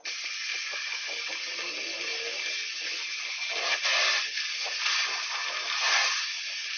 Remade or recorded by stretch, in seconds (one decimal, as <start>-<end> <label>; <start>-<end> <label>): 0.0-6.8 recorded